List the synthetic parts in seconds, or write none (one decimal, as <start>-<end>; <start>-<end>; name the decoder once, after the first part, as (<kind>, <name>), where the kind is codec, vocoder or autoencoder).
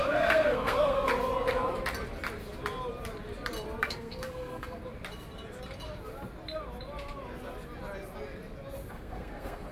0.0-1.1 (codec, SNAC); 3.8-4.8; 8.9-9.7